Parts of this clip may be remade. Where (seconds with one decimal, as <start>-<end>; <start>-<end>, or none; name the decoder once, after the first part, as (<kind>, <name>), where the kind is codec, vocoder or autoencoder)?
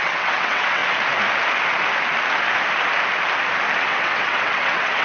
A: 0.0-0.8 (vocoder, WaveNeXt); 3.8-5.0